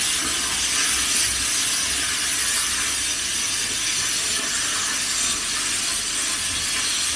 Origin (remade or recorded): recorded